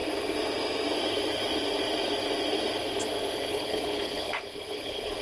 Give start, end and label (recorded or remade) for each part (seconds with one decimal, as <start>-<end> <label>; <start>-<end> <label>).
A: 0.0-3.5 recorded; 3.5-5.2 remade